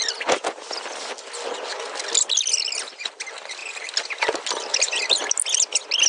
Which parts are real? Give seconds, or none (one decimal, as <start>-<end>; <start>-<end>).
0.0-6.1